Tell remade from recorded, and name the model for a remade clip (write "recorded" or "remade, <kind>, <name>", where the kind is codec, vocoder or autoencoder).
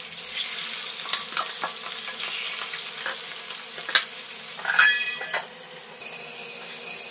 recorded